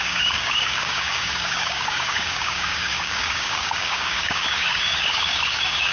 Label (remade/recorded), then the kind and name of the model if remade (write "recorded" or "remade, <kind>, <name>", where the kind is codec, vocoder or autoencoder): remade, codec, DAC